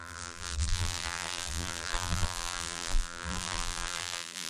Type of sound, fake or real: fake